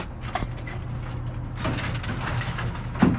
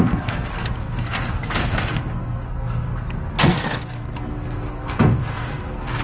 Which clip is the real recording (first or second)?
first